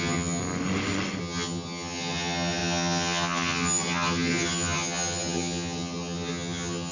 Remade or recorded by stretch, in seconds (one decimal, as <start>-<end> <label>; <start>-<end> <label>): 0.0-0.4 remade; 0.4-1.2 recorded; 1.2-6.9 remade